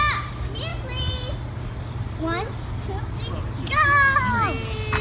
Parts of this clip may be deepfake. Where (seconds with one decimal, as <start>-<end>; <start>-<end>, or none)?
none